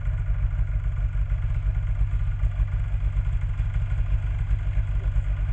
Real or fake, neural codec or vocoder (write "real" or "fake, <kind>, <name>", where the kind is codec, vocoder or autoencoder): real